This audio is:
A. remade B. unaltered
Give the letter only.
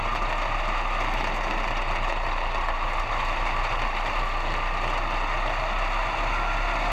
B